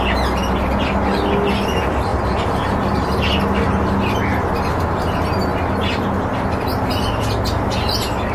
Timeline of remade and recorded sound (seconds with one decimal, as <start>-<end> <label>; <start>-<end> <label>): 0.0-2.1 recorded; 2.1-2.7 remade; 2.7-8.3 recorded